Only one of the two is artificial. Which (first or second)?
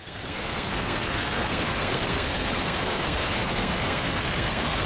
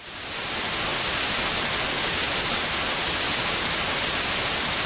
first